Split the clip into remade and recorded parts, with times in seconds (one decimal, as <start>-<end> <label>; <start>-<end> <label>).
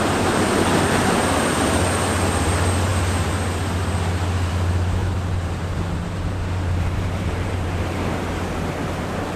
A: 0.0-5.0 recorded; 5.0-8.6 remade; 8.6-9.4 recorded